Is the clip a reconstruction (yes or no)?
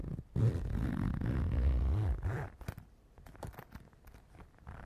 yes